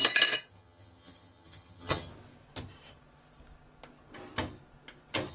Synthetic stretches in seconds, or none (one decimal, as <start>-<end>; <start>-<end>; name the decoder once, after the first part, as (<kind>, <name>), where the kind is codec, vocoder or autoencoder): 0.5-2.1 (vocoder, HiFi-GAN)